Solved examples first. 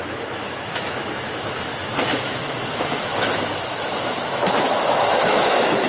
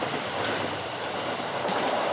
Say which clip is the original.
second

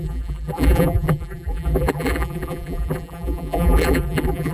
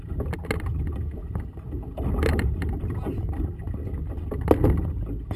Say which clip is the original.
second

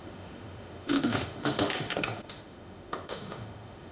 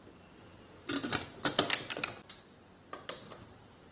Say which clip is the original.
second